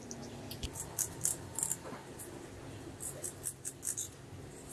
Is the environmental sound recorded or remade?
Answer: recorded